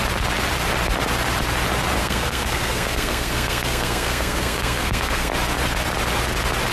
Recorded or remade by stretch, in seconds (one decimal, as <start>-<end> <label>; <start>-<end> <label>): 0.0-2.0 recorded; 2.0-5.3 remade; 5.3-6.7 recorded